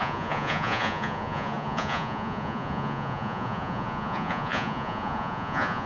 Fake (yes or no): yes